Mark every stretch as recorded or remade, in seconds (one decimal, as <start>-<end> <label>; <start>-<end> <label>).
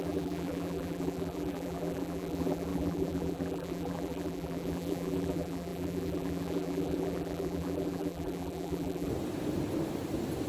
0.0-9.1 remade; 9.1-10.5 recorded